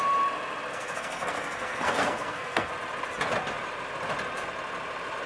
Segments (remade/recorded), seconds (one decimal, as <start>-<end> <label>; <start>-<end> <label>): 0.0-0.7 recorded; 0.7-2.7 remade; 2.7-5.3 recorded